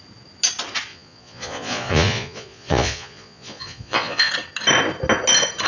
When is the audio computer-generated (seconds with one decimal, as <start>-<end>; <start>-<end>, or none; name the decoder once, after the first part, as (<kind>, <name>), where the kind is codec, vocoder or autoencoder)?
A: 0.9-4.3 (vocoder, Vocos)